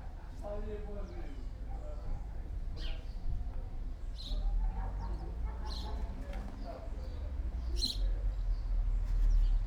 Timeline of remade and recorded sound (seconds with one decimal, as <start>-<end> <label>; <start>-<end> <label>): 0.0-9.7 recorded